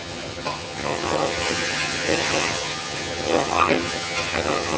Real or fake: fake